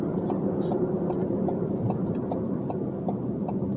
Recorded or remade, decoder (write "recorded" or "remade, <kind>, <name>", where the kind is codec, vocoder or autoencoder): recorded